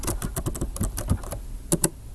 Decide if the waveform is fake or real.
real